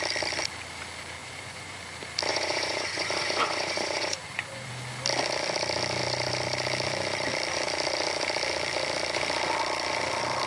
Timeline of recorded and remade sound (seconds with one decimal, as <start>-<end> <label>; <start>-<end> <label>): 0.0-1.2 recorded; 1.2-1.8 remade; 1.8-2.3 recorded; 2.3-4.7 remade; 4.7-10.5 recorded